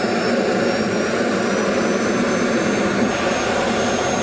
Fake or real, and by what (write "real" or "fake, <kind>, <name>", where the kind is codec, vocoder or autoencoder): real